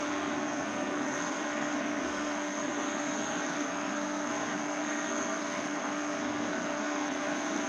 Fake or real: fake